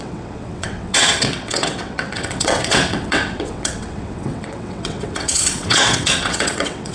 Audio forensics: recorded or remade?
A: remade